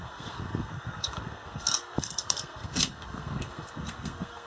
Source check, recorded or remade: remade